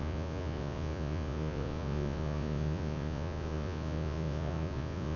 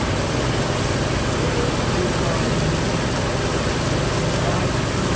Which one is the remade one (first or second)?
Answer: first